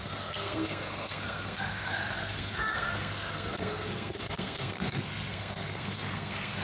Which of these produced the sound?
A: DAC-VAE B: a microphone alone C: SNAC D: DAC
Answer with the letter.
C